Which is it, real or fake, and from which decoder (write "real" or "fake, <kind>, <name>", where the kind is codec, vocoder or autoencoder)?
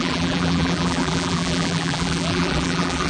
fake, vocoder, BigVGAN v2